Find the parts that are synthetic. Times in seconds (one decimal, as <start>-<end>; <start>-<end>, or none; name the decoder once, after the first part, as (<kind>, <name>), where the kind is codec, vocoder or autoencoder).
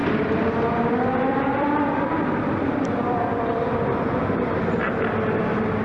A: 1.3-4.8 (vocoder, BigVGAN v2)